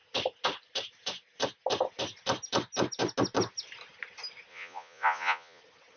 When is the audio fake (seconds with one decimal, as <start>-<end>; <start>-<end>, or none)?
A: 4.5-5.6